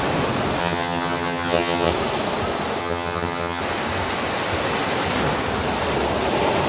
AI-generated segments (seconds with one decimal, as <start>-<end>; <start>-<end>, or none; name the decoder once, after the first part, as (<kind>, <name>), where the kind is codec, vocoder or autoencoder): 0.6-1.9 (vocoder, HiFi-GAN); 2.8-3.6